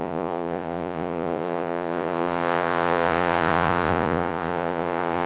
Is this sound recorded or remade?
remade